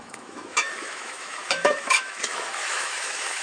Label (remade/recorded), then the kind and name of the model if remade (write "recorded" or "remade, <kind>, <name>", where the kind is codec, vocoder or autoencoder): remade, autoencoder, DAC-VAE